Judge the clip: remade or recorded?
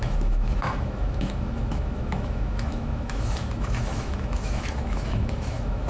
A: remade